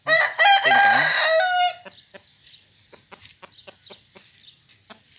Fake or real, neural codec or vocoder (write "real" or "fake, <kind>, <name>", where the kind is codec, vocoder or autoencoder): real